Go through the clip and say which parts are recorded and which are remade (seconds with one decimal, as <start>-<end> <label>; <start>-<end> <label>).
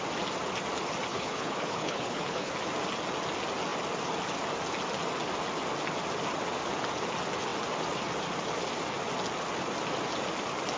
0.0-1.1 recorded; 1.1-2.5 remade; 2.5-10.8 recorded